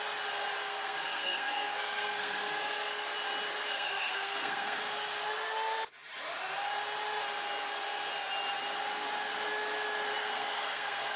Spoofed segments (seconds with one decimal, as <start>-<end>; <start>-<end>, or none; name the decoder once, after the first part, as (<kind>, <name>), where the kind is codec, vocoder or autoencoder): 0.6-3.0 (codec, SNAC); 3.5-4.8; 10.1-11.2